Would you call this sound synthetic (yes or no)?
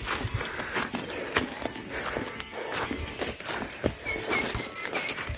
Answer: no